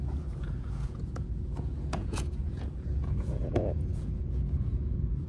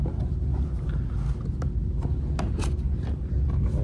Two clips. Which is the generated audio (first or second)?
first